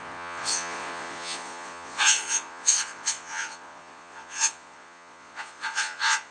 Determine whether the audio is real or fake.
fake